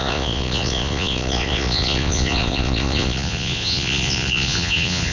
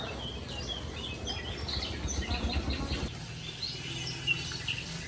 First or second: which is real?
second